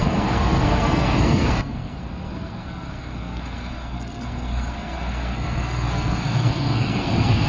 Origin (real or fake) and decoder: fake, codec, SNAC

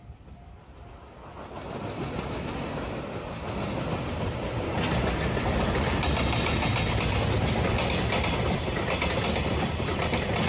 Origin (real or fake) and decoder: real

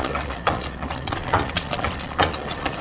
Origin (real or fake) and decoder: fake, vocoder, Vocos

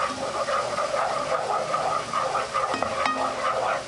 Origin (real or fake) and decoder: real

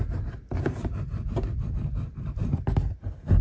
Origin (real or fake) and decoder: real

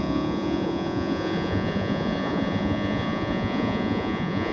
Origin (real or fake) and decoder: fake, vocoder, Vocos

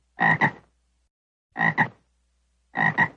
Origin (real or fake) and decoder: real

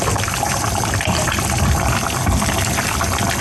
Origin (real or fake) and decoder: real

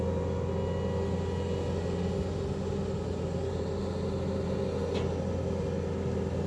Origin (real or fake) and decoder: real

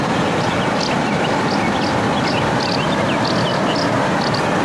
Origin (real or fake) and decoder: real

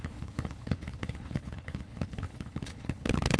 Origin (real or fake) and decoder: fake, codec, HILCodec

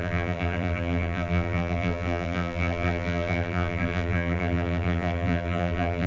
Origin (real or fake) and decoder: fake, vocoder, BigVGAN v2